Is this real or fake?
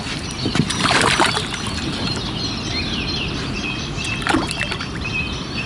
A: fake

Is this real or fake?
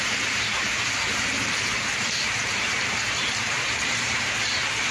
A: fake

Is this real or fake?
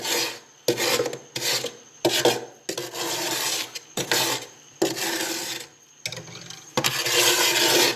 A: real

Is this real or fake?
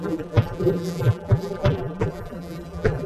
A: fake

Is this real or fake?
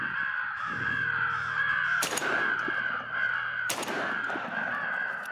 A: fake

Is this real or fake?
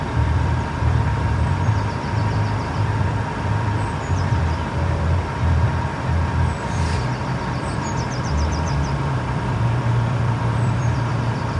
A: fake